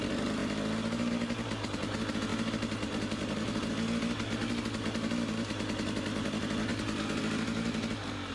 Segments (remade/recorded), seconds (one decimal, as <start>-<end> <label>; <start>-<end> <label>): 0.0-2.3 recorded; 2.3-3.7 remade; 3.7-8.3 recorded